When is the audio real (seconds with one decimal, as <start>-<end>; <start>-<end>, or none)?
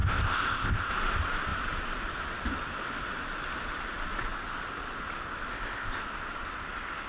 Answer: 0.9-5.5; 6.0-7.1